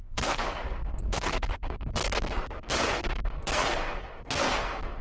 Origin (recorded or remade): remade